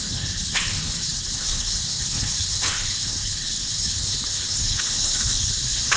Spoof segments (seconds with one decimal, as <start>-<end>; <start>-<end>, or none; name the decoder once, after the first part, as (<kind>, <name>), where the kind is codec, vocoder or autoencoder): 0.0-6.0 (codec, HILCodec)